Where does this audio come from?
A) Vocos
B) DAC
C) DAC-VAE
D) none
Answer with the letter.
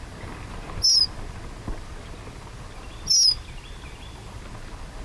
D